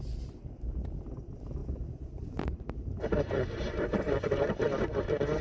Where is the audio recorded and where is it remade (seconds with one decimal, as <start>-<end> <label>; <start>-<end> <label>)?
0.0-1.6 recorded; 1.6-4.8 remade; 4.8-5.4 recorded